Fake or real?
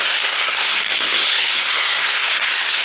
fake